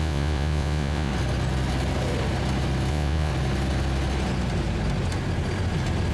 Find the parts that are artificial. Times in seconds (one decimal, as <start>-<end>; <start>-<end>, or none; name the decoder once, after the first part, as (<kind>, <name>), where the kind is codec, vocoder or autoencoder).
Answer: 0.0-1.1 (vocoder, Vocos); 2.9-3.3